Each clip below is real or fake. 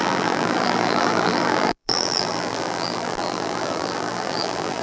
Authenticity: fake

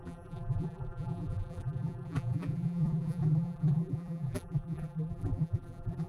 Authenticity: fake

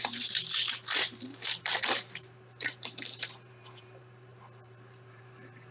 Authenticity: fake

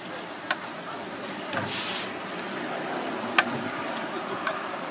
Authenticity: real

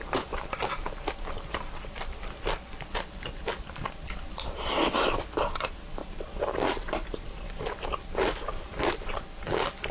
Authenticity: fake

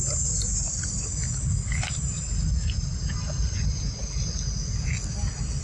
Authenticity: real